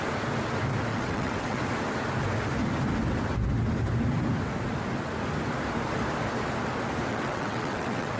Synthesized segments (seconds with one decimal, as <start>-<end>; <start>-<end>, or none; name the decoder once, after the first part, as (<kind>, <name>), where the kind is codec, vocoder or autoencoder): 0.9-1.6 (vocoder, WaveNeXt); 7.1-8.2